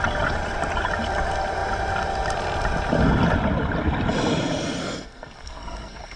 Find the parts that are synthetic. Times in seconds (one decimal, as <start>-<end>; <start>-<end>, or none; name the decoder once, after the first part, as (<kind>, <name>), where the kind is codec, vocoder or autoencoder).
4.8-6.2 (codec, SNAC)